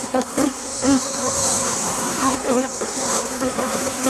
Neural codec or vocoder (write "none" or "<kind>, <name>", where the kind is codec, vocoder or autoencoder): codec, SNAC